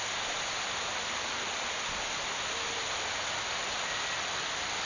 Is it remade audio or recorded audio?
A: recorded